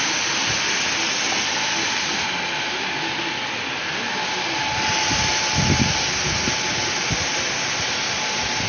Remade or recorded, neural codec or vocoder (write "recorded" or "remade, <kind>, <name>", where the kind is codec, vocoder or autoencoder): recorded